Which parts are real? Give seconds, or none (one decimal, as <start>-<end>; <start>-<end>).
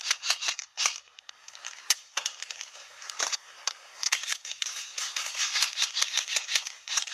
none